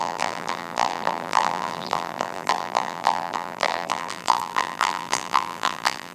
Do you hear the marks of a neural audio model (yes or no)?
yes